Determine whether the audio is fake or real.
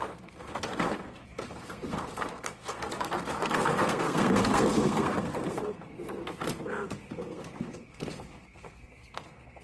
fake